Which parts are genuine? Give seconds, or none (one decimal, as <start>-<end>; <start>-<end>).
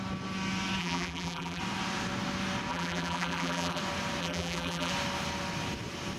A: 0.0-0.8; 1.6-2.7; 3.8-4.2; 4.9-6.2